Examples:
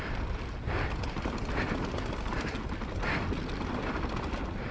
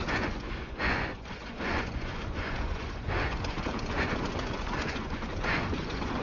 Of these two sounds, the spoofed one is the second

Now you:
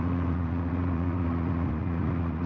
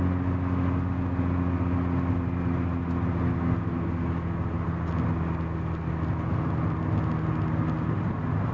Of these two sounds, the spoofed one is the first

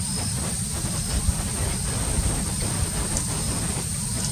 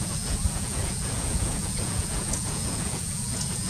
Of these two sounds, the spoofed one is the second